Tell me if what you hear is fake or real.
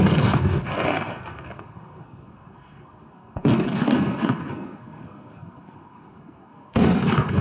fake